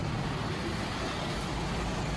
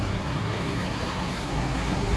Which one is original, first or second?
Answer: first